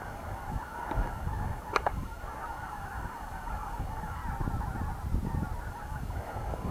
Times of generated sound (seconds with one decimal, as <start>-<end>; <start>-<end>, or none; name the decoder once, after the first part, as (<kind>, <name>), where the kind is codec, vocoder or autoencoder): 0.0-4.2 (codec, DAC); 5.7-6.7